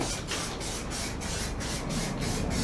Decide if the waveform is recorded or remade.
recorded